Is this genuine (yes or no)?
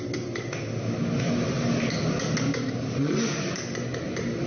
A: yes